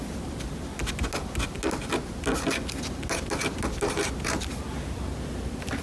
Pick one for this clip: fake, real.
real